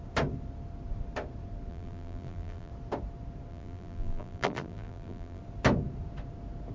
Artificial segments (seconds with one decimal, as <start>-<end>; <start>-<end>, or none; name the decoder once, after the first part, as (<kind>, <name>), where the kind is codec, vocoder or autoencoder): 1.7-2.7 (vocoder, BigVGAN v2); 3.5-5.4